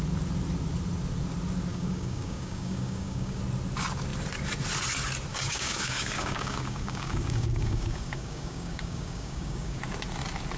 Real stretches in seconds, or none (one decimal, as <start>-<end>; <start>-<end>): 0.0-1.7; 3.4-5.3; 9.8-10.6